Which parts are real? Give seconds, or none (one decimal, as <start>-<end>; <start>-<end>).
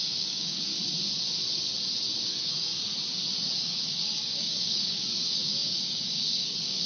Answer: 0.7-2.2; 2.7-3.6